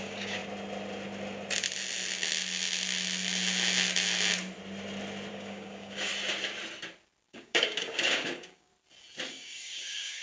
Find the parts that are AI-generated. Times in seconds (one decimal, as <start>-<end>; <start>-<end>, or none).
0.0-0.4; 5.3-6.1; 7.3-8.7; 9.3-10.2